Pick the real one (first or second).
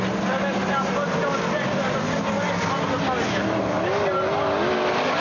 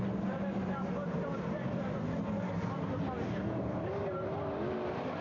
first